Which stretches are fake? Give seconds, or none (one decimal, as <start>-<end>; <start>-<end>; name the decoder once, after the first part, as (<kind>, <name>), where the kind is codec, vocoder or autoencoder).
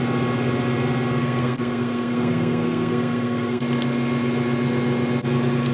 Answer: 1.2-3.6 (codec, SNAC)